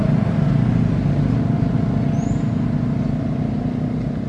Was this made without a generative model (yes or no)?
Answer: yes